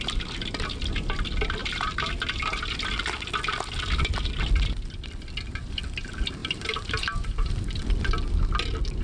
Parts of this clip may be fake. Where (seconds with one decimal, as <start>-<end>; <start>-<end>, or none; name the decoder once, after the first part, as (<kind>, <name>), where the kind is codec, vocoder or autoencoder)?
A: 1.6-2.1 (vocoder, BigVGAN v2); 6.4-7.7